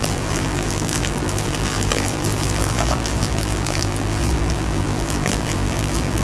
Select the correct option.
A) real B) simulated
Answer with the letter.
B